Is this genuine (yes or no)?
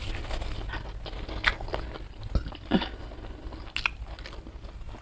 yes